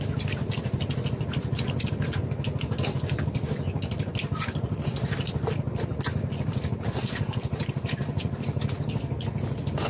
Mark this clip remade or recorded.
recorded